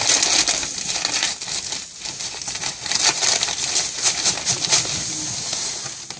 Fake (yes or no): no